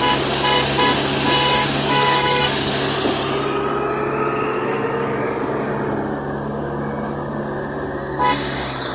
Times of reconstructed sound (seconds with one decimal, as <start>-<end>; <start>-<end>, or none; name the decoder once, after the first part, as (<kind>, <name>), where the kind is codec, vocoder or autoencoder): 1.6-2.7 (codec, DAC); 4.5-5.7